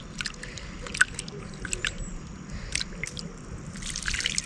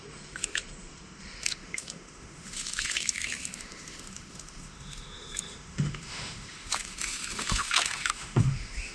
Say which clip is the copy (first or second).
second